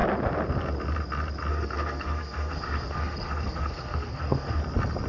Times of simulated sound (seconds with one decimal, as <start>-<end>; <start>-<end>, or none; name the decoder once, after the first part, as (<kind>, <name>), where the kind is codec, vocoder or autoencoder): 1.5-4.6 (codec, SNAC)